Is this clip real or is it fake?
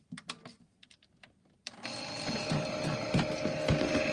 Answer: real